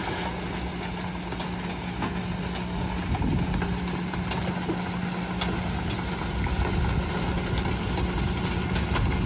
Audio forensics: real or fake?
real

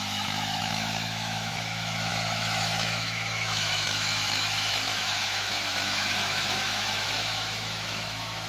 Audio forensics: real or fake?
fake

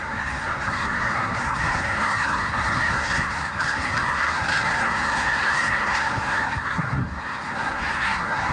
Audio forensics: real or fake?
fake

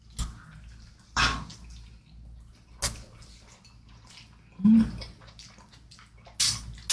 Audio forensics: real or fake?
real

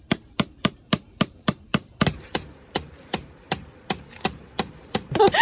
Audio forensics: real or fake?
fake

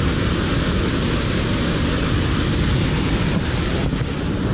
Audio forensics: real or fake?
real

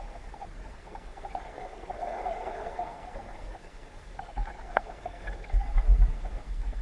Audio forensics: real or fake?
fake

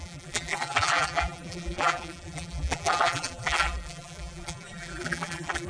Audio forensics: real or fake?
fake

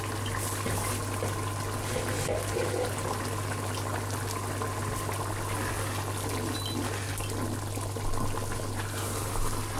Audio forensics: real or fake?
real